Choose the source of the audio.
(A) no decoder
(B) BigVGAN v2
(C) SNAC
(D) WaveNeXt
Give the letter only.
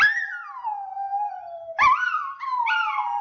A